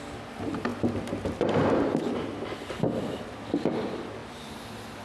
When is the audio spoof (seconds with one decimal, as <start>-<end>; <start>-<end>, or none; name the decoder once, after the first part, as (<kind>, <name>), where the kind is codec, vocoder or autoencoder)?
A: none